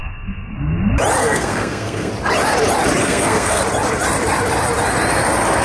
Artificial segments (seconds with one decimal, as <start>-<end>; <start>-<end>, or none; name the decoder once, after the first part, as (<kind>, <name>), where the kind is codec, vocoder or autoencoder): 0.0-0.5 (codec, SNAC); 1.2-2.1; 3.0-3.6